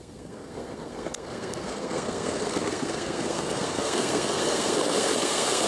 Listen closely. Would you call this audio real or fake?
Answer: fake